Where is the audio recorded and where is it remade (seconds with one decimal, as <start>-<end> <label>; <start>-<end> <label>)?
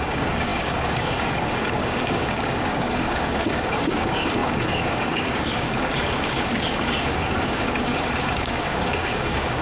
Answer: 0.0-9.6 remade